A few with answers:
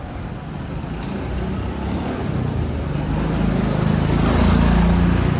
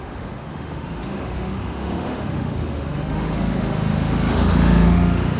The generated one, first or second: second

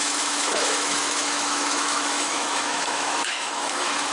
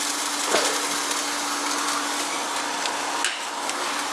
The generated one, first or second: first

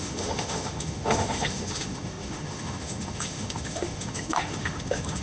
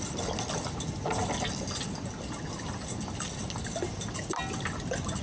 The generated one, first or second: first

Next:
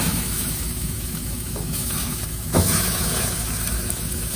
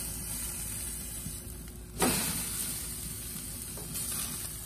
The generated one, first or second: first